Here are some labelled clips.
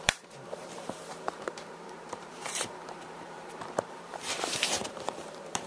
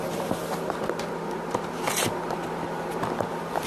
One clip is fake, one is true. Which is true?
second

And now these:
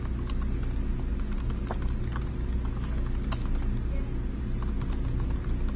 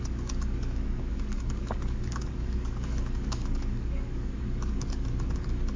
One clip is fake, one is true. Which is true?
first